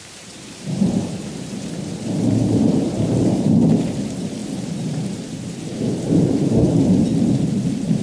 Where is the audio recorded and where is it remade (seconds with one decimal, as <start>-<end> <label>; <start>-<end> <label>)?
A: 0.0-8.0 remade